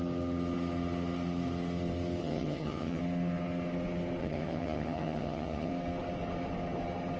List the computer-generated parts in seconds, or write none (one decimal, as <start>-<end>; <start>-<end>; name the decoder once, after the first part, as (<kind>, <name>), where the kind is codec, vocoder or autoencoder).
2.2-3.0 (vocoder, HiFi-GAN); 4.2-5.7